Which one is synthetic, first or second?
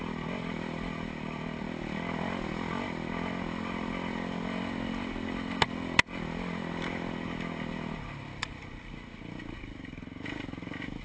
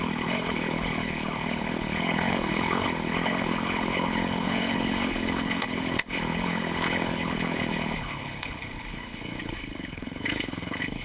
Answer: second